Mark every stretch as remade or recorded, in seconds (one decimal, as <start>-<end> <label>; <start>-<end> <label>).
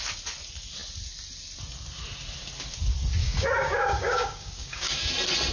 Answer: 0.0-3.2 recorded; 3.2-5.1 remade; 5.1-5.5 recorded